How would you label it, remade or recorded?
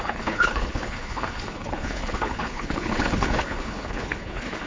remade